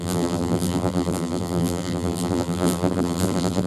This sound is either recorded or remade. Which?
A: remade